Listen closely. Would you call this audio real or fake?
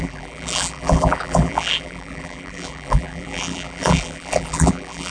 fake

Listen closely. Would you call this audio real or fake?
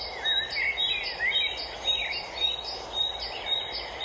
real